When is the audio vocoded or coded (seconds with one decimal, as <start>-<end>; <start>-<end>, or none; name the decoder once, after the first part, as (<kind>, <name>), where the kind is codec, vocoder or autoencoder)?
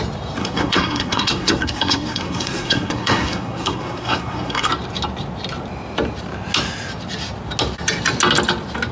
0.4-4.7 (codec, SNAC)